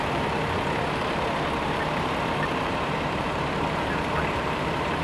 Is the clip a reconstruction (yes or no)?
yes